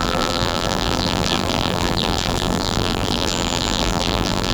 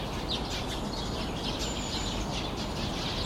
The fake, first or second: first